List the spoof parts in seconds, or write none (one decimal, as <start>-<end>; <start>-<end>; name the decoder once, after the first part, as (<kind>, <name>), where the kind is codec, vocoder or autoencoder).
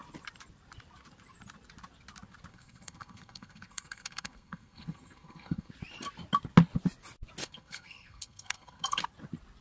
2.5-5.7 (codec, SNAC); 7.4-9.0